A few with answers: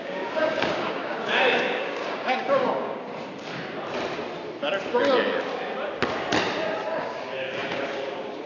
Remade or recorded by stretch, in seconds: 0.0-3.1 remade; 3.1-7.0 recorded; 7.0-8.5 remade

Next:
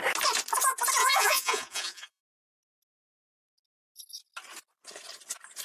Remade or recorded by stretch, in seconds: 0.0-1.0 recorded; 1.0-2.2 remade; 2.2-5.6 recorded

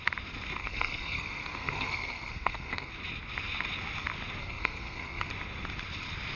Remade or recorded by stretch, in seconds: 0.0-0.6 recorded; 0.6-2.9 remade; 2.9-4.4 recorded; 4.4-5.3 remade; 5.3-6.4 recorded

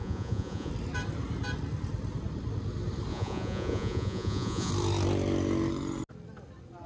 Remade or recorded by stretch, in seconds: 0.0-0.7 remade; 0.7-3.1 recorded; 3.1-4.7 remade; 4.7-6.9 recorded

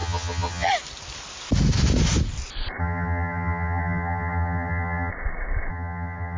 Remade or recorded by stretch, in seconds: 0.0-0.7 remade; 0.7-2.8 recorded; 2.8-5.1 remade; 5.1-5.7 recorded; 5.7-6.4 remade